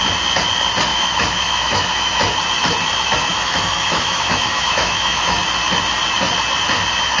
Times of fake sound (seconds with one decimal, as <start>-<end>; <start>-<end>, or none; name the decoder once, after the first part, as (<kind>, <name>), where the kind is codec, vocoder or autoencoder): 0.9-2.2 (autoencoder, DAC-VAE); 3.3-5.4